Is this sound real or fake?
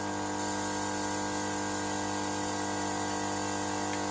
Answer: real